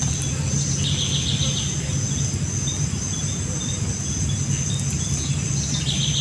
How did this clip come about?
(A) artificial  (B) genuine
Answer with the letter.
B